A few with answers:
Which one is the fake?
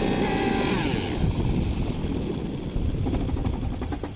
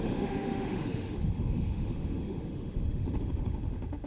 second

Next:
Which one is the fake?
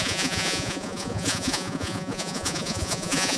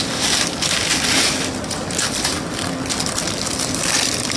first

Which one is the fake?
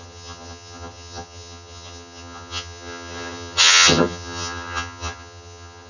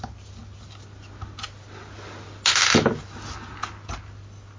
first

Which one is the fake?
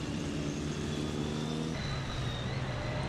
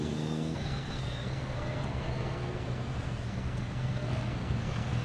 second